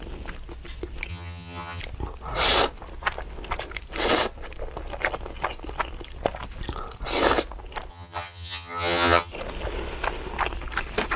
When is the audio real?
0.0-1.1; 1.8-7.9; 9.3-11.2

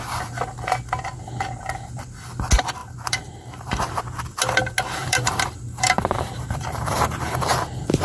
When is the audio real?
0.0-2.8; 4.0-5.0; 7.5-8.0

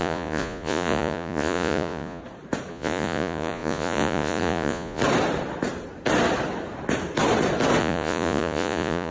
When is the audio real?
2.2-2.7; 5.0-7.8

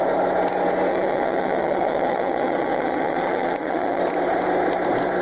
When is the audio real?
0.0-0.9; 4.0-5.2

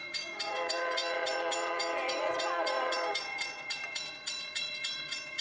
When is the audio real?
none

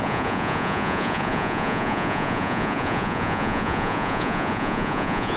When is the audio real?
none

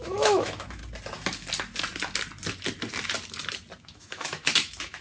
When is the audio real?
0.8-3.8